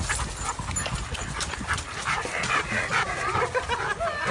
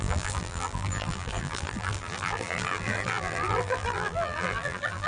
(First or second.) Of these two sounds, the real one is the first